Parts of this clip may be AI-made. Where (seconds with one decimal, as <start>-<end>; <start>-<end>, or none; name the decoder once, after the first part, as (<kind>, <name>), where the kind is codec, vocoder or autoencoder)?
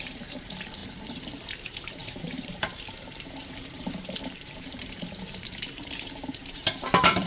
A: 0.0-7.3 (vocoder, BigVGAN v2)